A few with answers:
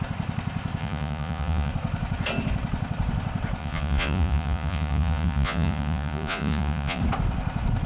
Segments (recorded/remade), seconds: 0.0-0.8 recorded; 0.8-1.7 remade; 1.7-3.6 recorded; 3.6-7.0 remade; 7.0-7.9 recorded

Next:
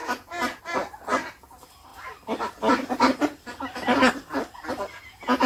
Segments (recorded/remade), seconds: 0.0-0.6 remade; 0.6-5.5 recorded

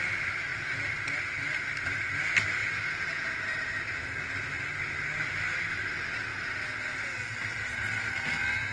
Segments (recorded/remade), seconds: 0.0-2.6 recorded; 2.6-3.3 remade; 3.3-8.7 recorded

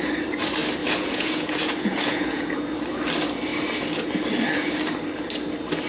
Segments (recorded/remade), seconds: 0.0-0.8 recorded; 0.8-2.6 remade; 2.6-5.9 recorded

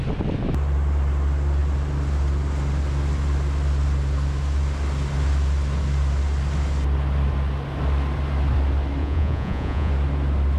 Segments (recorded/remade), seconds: 0.0-9.0 recorded; 9.0-9.9 remade; 9.9-10.6 recorded

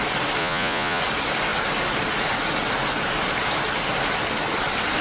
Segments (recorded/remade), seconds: 0.0-0.4 recorded; 0.4-1.0 remade; 1.0-5.0 recorded